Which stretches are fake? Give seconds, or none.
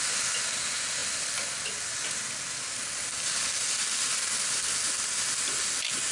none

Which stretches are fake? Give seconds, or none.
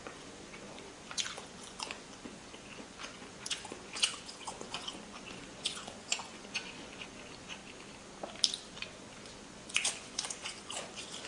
0.0-7.6; 8.8-11.3